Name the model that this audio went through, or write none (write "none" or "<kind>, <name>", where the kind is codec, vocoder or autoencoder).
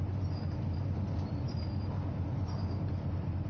none